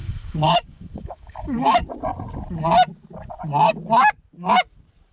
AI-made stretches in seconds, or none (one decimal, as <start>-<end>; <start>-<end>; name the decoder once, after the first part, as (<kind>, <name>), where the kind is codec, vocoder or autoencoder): 0.0-1.8 (autoencoder, DAC-VAE)